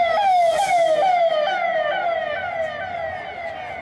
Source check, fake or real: real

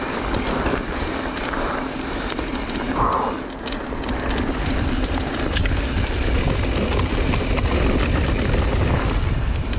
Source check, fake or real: real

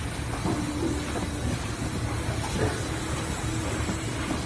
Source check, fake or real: real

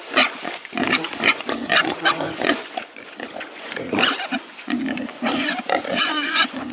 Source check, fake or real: fake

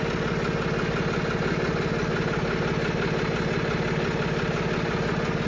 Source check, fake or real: real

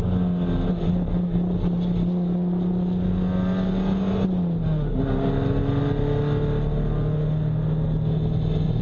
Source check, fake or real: real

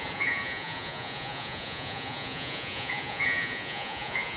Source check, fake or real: fake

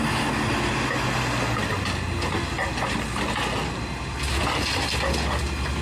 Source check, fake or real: real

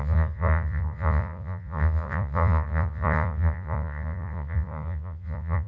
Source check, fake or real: fake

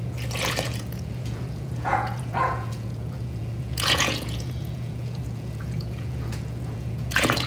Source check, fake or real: fake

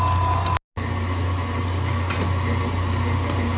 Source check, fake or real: real